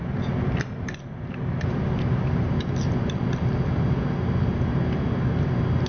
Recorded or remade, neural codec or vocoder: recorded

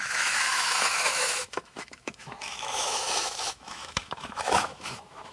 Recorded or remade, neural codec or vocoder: remade, autoencoder, DAC-VAE